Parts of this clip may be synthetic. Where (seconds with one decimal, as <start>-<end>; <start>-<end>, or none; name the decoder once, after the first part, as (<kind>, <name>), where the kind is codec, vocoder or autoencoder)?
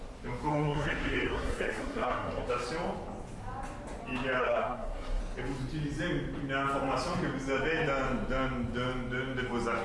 0.5-2.5 (codec, SNAC); 4.4-5.2